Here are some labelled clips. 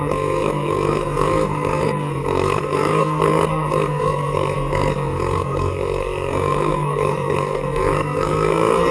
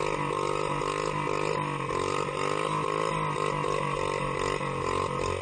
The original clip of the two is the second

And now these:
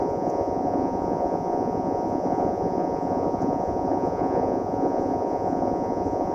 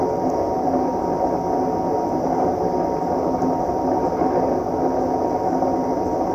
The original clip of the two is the second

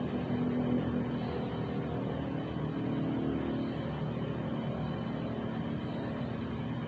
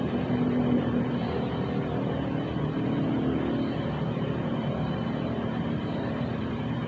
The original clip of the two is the first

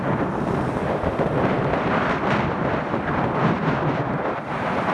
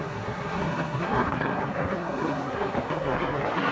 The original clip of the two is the first